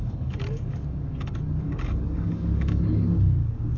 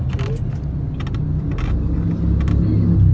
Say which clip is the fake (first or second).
first